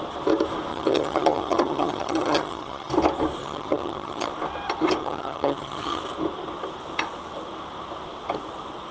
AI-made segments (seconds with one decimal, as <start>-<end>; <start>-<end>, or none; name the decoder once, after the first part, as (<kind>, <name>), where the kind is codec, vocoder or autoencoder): 0.7-2.9 (vocoder, HiFi-GAN); 3.4-4.3; 5.0-6.0